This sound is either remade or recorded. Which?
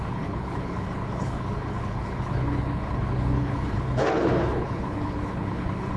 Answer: remade